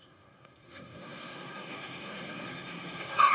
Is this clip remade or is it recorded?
remade